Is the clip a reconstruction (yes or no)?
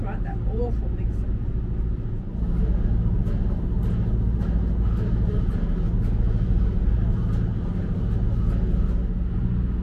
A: no